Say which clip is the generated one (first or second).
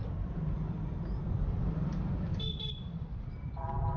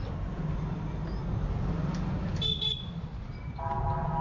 first